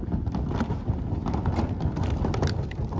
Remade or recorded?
recorded